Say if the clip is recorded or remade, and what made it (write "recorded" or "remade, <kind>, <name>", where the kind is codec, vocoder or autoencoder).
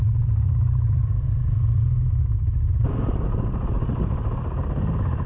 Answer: recorded